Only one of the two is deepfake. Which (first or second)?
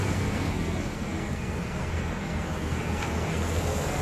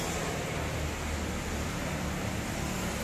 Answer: first